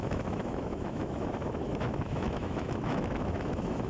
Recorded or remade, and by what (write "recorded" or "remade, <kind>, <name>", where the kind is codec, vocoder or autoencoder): remade, autoencoder, DAC-VAE